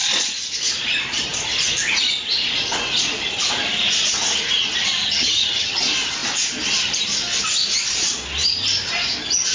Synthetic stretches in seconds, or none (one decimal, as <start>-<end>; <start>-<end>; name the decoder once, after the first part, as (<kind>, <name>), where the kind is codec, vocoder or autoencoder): 5.0-5.8 (vocoder, HiFi-GAN)

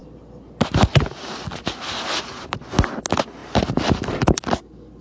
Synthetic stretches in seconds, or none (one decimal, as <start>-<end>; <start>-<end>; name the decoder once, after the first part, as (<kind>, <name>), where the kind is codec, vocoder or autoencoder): none